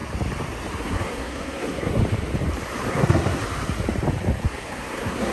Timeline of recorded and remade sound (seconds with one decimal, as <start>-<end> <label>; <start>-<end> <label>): 0.0-0.8 recorded; 0.8-2.0 remade; 2.0-2.9 recorded; 2.9-3.4 remade; 3.4-4.4 recorded; 4.4-5.3 remade